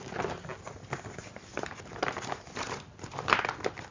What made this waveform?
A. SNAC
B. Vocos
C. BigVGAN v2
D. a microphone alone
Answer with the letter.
D